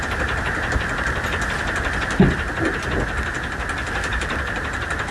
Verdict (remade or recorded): recorded